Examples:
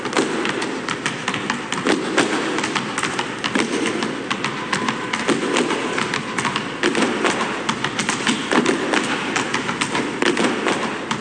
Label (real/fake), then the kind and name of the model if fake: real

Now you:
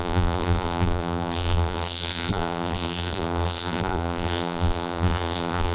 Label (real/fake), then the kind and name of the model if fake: fake, vocoder, BigVGAN v2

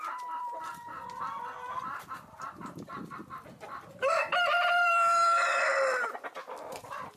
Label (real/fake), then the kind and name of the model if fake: fake, vocoder, BigVGAN v2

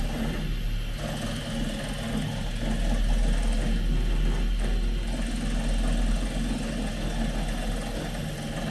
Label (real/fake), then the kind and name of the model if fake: real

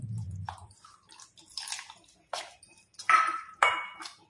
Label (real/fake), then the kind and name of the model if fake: fake, vocoder, BigVGAN v2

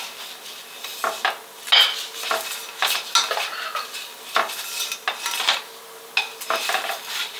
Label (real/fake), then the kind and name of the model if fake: real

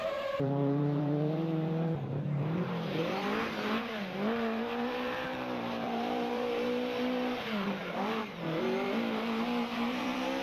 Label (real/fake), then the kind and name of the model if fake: fake, vocoder, BigVGAN v2